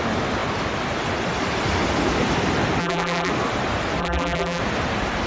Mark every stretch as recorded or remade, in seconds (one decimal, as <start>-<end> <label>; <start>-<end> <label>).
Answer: 0.0-2.8 recorded; 2.8-3.3 remade; 3.3-4.0 recorded; 4.0-4.6 remade; 4.6-5.3 recorded